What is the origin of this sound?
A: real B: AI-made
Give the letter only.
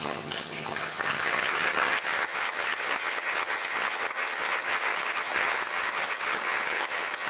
B